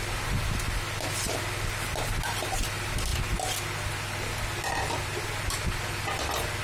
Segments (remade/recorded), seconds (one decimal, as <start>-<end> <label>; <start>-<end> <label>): 0.0-6.6 recorded